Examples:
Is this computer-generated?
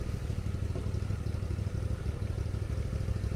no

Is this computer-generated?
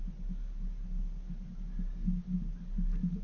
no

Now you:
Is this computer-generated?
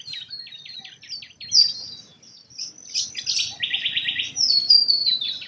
no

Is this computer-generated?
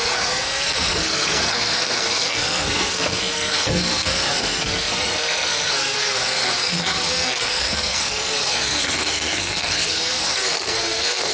yes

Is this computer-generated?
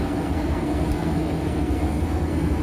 yes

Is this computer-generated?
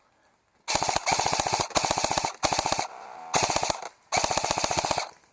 no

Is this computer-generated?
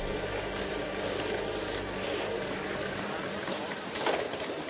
no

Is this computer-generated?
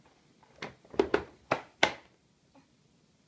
no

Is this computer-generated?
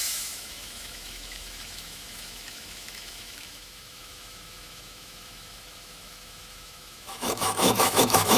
yes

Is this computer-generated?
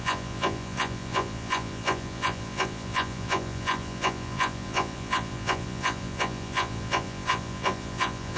yes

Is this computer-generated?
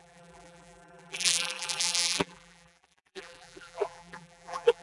yes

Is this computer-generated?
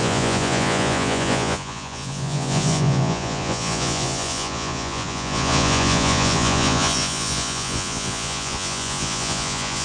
yes